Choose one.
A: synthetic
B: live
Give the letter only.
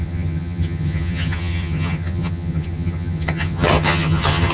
A